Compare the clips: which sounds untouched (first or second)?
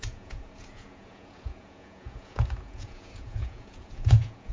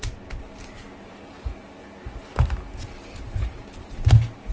second